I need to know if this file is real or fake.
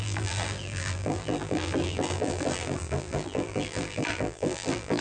fake